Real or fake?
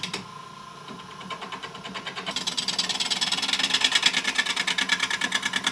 fake